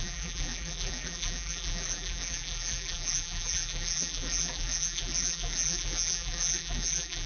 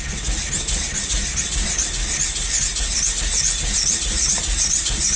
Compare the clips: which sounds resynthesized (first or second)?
first